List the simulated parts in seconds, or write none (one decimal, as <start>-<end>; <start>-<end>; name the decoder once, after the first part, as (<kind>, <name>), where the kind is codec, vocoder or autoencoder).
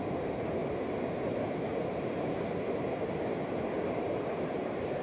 0.0-0.6 (vocoder, BigVGAN v2); 3.6-5.0